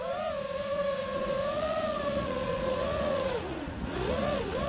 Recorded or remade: remade